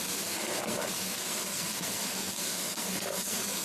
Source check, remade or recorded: remade